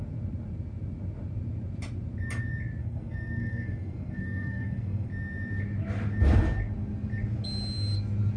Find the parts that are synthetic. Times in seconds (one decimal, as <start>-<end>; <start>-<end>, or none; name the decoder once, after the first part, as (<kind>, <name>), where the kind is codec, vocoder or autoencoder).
2.8-5.1 (codec, SNAC)